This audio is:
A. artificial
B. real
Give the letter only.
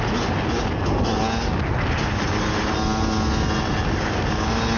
B